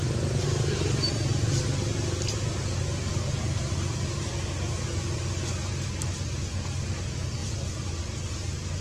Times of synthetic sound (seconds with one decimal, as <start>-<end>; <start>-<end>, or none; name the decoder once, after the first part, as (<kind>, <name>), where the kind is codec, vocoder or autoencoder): 7.4-8.0 (vocoder, BigVGAN v2)